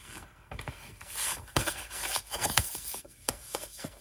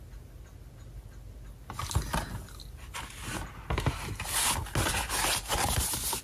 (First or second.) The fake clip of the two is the first